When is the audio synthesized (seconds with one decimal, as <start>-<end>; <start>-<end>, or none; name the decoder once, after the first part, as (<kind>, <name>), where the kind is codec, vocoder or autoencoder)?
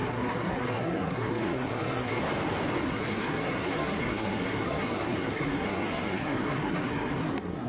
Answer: 0.0-2.2 (codec, SNAC); 2.8-7.7